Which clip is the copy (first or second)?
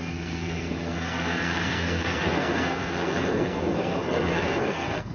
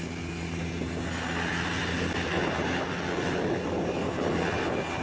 first